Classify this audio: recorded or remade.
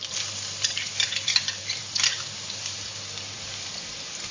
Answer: remade